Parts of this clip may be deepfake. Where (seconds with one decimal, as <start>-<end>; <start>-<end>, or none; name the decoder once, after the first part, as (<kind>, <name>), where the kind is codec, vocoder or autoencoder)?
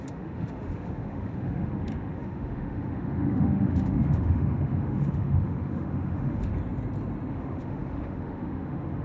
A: 0.0-6.5 (autoencoder, DAC-VAE); 7.3-9.0